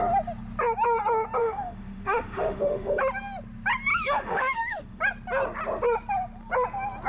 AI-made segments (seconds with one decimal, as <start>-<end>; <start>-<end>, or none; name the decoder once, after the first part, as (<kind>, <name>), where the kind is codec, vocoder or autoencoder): 1.4-3.0 (autoencoder, DAC-VAE); 3.9-5.0